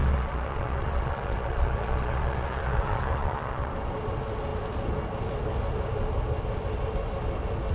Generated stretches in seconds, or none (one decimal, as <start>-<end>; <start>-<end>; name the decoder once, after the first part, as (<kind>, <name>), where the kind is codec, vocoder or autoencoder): 0.0-3.7 (vocoder, Vocos)

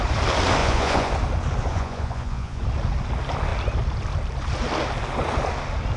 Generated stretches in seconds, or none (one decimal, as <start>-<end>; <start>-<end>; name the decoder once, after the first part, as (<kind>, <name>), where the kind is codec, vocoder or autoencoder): 0.6-1.1 (vocoder, Vocos); 1.7-2.6

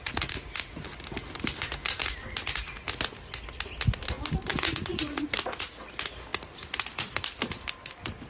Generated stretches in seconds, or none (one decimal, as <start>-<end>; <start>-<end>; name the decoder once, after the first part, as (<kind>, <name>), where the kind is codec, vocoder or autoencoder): 4.5-5.2 (vocoder, Vocos)

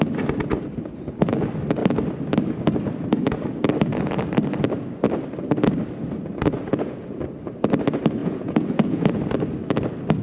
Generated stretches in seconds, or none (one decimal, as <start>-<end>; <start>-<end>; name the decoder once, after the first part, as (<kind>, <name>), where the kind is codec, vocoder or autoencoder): 6.7-7.2 (vocoder, Vocos); 8.2-9.2

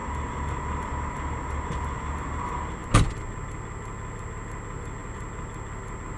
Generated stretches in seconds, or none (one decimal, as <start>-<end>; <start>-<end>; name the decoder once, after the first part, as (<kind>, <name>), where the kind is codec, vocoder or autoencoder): none

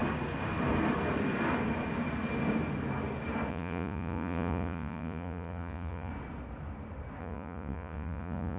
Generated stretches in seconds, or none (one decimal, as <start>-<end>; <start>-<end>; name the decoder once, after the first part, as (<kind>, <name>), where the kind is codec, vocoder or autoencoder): 3.5-6.1 (vocoder, Vocos); 7.2-8.6